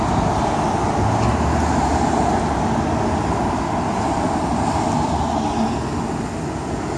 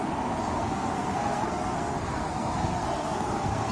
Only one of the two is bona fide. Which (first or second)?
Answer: first